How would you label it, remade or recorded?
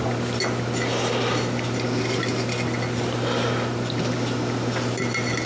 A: recorded